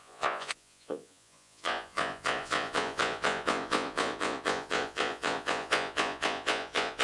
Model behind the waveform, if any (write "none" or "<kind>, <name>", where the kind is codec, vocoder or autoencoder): vocoder, Vocos